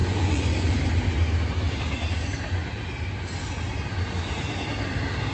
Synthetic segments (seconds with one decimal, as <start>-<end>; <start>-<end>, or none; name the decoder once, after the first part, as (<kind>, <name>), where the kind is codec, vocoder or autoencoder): 0.0-0.7 (vocoder, Vocos)